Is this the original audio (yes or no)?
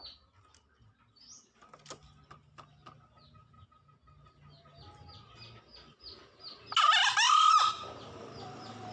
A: yes